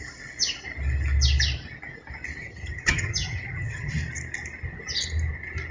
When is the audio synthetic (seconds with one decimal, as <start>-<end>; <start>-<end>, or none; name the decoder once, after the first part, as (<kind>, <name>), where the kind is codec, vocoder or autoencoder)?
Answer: 2.4-3.9 (vocoder, HiFi-GAN)